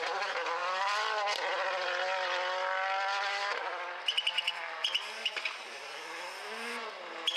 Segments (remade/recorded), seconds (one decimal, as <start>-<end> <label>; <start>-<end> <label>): 0.0-7.4 recorded